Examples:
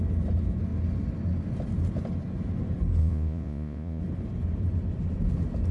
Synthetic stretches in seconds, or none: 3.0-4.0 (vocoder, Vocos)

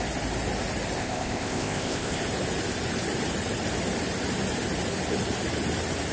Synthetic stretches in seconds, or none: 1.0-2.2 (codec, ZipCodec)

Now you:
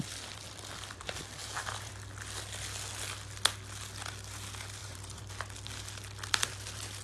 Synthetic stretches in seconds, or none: 1.4-1.9 (vocoder, BigVGAN v2); 4.8-5.3

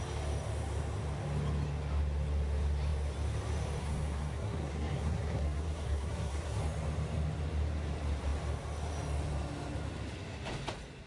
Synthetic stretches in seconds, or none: 3.8-6.6 (codec, SNAC)

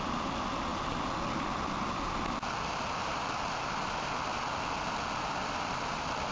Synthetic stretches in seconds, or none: none